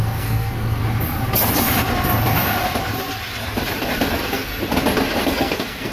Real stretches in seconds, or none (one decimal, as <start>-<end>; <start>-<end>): 0.8-4.1; 4.5-5.2